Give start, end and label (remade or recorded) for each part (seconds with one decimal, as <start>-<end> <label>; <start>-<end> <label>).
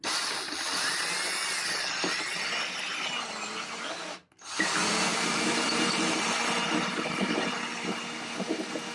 0.0-5.1 recorded; 5.1-7.5 remade; 7.5-8.9 recorded